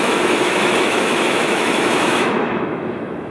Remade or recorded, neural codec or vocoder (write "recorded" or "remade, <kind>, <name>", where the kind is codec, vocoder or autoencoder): remade, autoencoder, DAC-VAE